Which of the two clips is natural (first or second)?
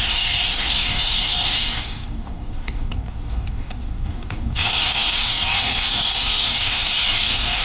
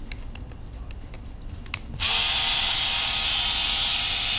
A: second